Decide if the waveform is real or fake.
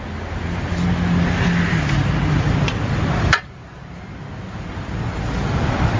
real